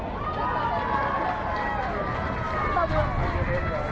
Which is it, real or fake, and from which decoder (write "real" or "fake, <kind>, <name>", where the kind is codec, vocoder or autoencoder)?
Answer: real